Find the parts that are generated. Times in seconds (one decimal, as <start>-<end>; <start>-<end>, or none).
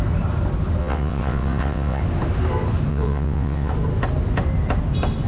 0.8-2.0; 2.9-3.7